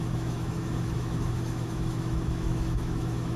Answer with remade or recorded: remade